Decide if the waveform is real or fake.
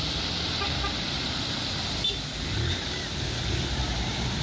real